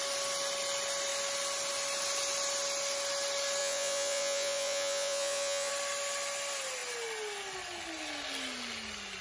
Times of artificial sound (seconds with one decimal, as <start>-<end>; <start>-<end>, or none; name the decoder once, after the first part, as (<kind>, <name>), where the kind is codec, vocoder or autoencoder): 3.6-5.7 (vocoder, Vocos)